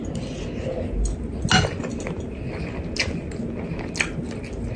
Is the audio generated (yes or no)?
no